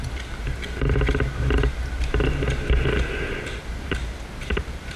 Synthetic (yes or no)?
no